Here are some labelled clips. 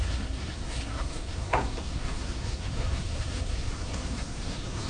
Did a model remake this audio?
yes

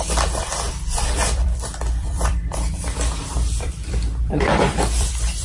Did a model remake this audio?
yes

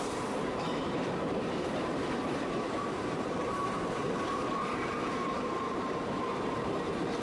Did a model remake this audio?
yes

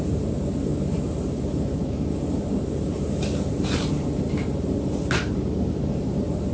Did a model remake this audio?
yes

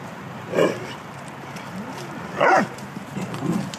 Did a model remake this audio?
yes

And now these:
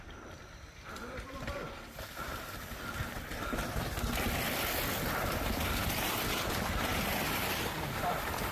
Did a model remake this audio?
yes